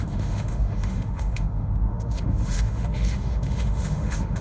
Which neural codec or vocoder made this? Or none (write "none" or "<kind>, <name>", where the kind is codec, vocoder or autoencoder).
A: autoencoder, DAC-VAE